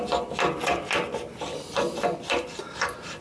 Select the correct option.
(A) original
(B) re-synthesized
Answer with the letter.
A